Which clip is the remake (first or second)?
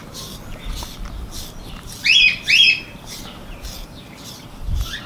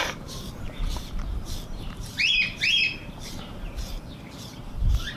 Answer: second